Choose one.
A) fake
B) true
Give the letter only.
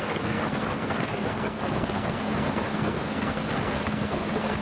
A